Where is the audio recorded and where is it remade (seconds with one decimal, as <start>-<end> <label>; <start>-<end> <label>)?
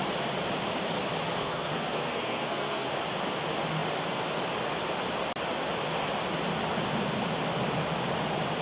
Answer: 0.0-1.4 recorded; 1.4-2.9 remade; 2.9-8.6 recorded